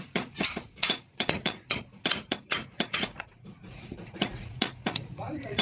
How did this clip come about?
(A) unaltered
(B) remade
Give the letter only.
B